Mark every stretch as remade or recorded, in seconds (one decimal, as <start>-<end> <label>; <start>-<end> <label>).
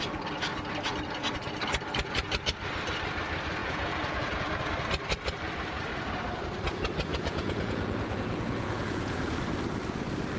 0.0-3.6 recorded; 3.6-4.7 remade; 4.7-7.1 recorded; 7.1-9.4 remade; 9.4-10.4 recorded